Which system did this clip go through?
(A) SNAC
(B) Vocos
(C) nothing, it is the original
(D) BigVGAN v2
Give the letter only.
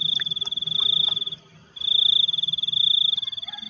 C